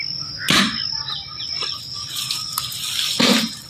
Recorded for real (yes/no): yes